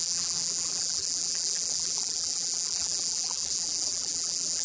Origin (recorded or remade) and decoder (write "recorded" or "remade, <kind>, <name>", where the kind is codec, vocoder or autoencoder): remade, vocoder, BigVGAN v2